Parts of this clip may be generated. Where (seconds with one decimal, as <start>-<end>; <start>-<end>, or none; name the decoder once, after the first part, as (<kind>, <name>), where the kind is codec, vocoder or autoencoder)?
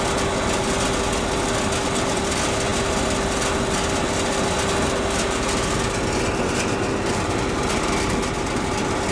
none